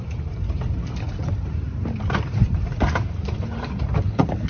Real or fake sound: fake